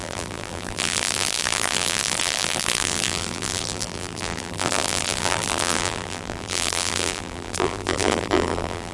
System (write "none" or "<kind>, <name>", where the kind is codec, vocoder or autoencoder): vocoder, BigVGAN v2